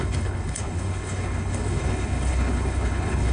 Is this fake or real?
fake